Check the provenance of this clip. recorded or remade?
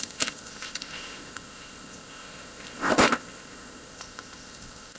remade